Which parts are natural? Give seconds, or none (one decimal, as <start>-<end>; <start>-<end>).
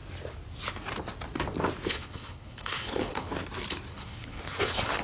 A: 0.0-1.9; 3.3-3.9